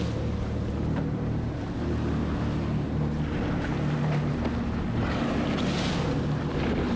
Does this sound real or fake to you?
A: real